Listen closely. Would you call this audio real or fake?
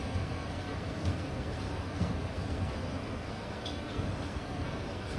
fake